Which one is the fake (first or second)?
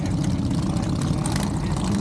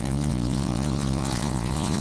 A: second